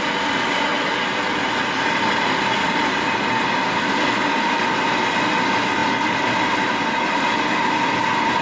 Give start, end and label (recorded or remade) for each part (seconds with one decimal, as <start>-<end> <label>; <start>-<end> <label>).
0.0-8.4 recorded

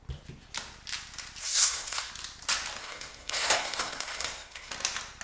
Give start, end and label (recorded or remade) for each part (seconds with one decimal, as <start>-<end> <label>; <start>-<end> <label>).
0.0-1.4 recorded; 1.4-2.1 remade; 2.1-2.8 recorded; 2.8-4.7 remade; 4.7-5.2 recorded

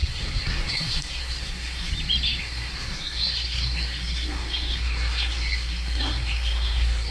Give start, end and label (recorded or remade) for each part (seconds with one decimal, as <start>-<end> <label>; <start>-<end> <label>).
0.0-1.9 remade; 1.9-2.4 recorded; 2.4-7.1 remade